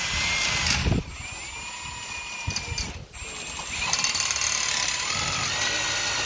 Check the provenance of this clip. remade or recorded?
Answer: recorded